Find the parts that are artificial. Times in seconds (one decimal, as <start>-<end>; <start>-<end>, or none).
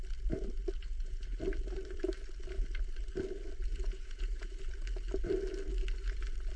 0.8-1.4; 3.7-4.5